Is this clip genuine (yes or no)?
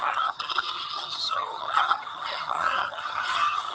no